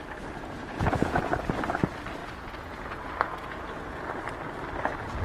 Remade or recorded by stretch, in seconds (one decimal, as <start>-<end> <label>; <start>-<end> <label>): 0.0-0.6 recorded; 0.6-1.2 remade; 1.2-2.2 recorded; 2.2-4.2 remade; 4.2-5.2 recorded